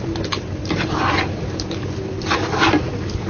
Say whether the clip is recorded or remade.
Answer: recorded